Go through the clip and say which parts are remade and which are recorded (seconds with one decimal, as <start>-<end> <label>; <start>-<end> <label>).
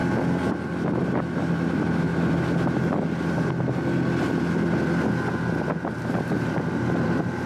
0.0-0.5 recorded; 0.5-2.1 remade; 2.1-6.1 recorded; 6.1-7.5 remade